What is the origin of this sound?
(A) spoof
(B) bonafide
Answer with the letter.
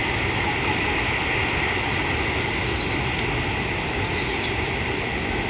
B